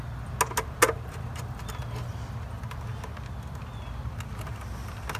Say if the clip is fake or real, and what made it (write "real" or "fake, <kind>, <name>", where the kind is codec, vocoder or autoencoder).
real